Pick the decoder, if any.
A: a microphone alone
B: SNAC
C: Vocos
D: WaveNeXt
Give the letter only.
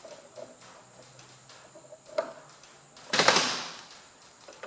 A